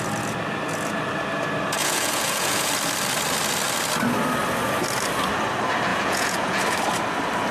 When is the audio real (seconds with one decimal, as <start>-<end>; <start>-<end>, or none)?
0.0-1.8; 2.7-5.9; 6.6-7.5